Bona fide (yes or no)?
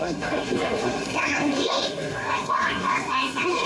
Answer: no